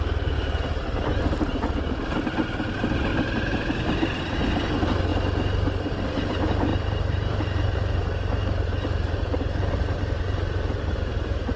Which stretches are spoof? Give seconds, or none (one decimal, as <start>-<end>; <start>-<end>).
3.1-4.2; 6.7-11.6